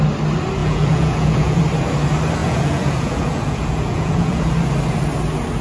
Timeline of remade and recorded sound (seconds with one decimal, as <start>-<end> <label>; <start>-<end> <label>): 0.0-0.6 recorded; 0.6-1.6 remade; 1.6-2.4 recorded; 2.4-4.5 remade; 4.5-5.6 recorded